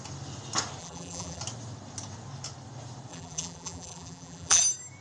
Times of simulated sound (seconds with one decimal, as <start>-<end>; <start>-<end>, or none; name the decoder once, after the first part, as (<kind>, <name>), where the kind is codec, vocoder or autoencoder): 0.8-1.4 (vocoder, BigVGAN v2); 3.1-4.6